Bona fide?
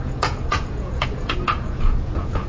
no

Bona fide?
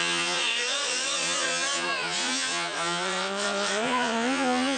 no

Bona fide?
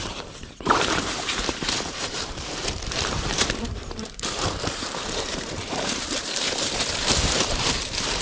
no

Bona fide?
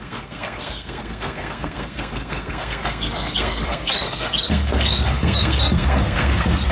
no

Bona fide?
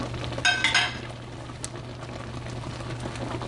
yes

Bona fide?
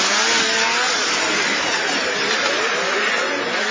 yes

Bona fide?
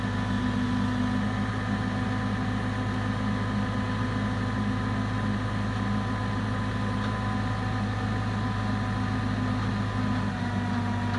yes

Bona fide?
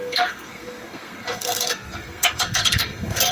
no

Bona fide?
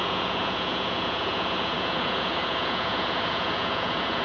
no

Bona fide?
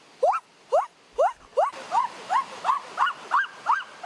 yes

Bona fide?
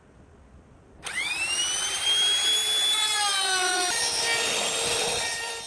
yes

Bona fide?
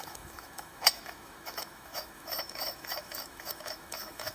no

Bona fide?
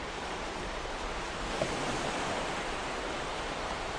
no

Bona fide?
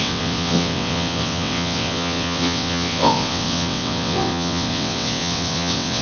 no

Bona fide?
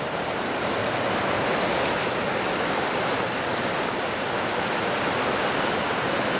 yes